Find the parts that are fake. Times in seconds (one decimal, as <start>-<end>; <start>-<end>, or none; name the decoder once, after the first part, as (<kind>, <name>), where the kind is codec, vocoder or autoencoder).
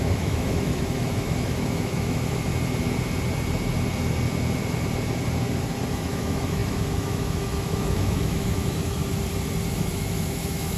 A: 0.0-2.5 (autoencoder, DAC-VAE); 5.9-9.0; 9.7-10.8